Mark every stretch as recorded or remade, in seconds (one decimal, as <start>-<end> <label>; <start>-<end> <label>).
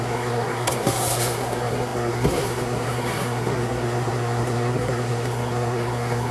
0.0-6.3 remade